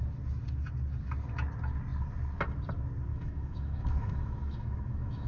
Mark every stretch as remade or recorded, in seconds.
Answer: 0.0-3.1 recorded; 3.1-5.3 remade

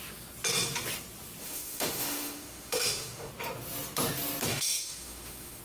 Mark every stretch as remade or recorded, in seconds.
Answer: 0.0-1.4 recorded; 1.4-3.3 remade; 3.3-4.5 recorded; 4.5-5.6 remade